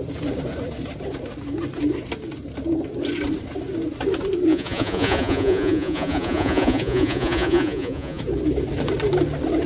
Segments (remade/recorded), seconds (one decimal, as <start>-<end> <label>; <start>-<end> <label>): 0.0-4.5 recorded; 4.5-8.2 remade; 8.2-9.7 recorded